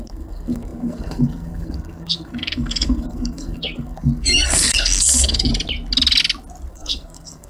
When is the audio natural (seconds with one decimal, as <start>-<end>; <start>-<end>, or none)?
5.5-6.7